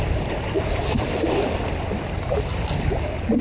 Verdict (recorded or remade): recorded